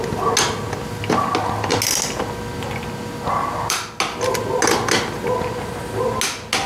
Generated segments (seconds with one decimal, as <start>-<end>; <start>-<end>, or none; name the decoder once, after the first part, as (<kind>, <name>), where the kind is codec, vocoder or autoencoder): none